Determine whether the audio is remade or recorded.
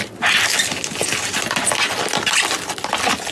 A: recorded